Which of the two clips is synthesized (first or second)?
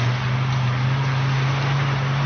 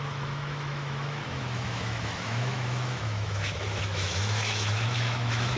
second